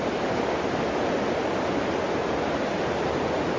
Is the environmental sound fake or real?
real